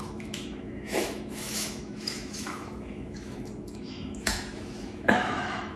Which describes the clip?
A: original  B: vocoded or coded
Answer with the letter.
B